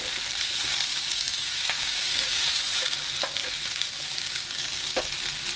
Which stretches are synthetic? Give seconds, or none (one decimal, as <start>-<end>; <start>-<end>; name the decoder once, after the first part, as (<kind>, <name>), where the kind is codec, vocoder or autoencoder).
0.9-2.4 (codec, DAC); 3.4-5.0